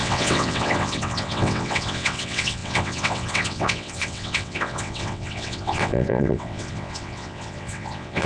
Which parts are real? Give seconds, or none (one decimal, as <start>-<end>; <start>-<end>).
none